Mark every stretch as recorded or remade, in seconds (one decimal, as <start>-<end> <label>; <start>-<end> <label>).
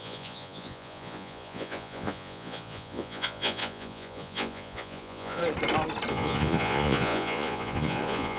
0.0-5.4 remade; 5.4-6.1 recorded; 6.1-8.4 remade